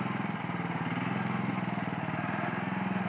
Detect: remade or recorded recorded